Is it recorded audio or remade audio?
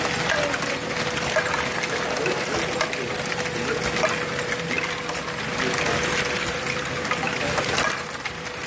recorded